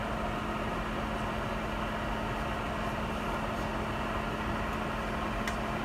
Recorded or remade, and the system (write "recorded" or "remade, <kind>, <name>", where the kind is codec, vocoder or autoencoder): recorded